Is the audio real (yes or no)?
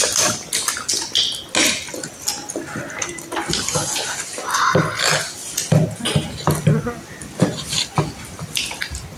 yes